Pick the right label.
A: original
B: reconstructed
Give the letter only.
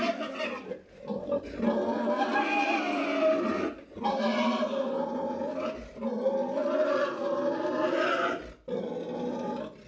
A